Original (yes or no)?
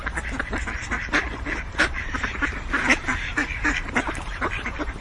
no